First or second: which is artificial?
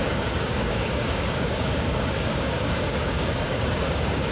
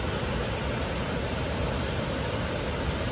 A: first